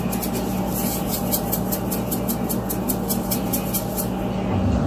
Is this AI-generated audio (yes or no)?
no